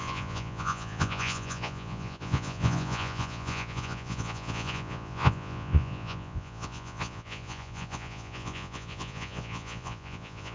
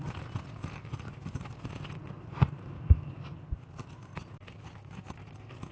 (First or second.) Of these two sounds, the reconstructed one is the first